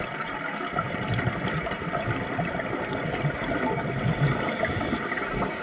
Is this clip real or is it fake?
real